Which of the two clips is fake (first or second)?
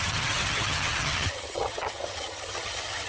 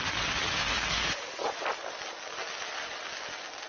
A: first